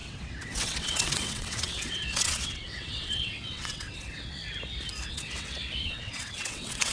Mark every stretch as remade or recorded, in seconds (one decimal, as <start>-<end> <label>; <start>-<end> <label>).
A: 0.0-4.4 remade; 4.4-5.1 recorded; 5.1-6.9 remade